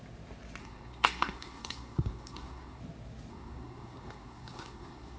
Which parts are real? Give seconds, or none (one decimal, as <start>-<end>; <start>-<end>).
0.0-0.6; 2.8-3.3